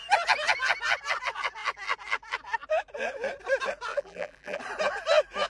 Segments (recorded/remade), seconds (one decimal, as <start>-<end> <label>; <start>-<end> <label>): 0.0-3.9 recorded; 3.9-4.6 remade; 4.6-5.5 recorded